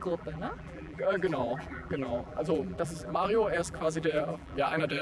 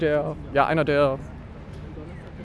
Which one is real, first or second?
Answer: second